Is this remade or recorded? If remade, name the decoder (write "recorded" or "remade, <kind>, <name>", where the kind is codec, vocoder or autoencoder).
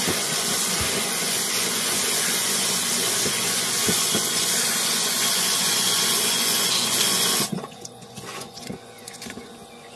remade, vocoder, Vocos